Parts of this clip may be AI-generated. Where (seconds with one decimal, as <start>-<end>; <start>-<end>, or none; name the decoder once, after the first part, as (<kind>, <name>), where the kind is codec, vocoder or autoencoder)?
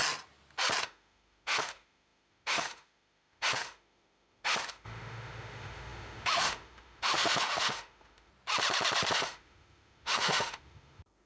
0.8-8.3 (autoencoder, DAC-VAE); 9.1-11.3